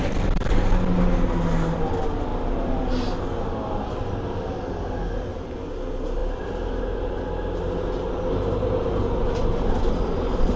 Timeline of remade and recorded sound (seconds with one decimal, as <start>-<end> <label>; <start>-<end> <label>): 0.0-10.6 recorded